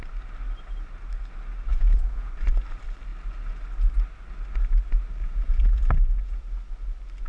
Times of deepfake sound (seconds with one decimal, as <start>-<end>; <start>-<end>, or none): 1.7-2.3; 5.2-6.4